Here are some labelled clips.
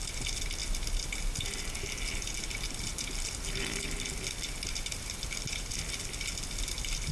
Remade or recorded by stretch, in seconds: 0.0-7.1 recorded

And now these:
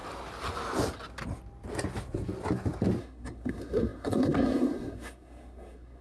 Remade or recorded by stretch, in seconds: 0.0-3.0 recorded; 3.0-6.0 remade

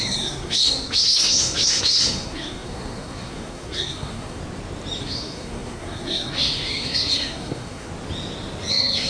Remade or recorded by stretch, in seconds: 0.0-4.4 remade; 4.4-5.0 recorded; 5.0-7.9 remade; 7.9-8.7 recorded; 8.7-9.1 remade

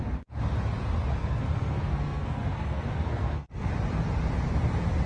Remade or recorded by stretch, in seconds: 0.0-1.2 recorded; 1.2-3.7 remade; 3.7-5.1 recorded

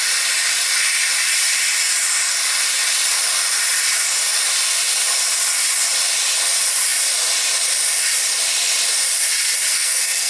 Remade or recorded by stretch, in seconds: 0.0-9.7 recorded; 9.7-10.3 remade

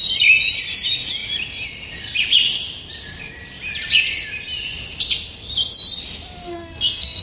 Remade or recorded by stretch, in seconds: 0.0-6.4 recorded; 6.4-7.2 remade

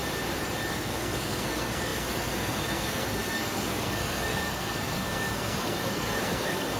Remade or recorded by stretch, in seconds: 0.0-0.7 recorded; 0.7-6.8 remade